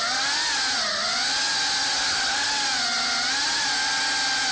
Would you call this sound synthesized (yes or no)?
no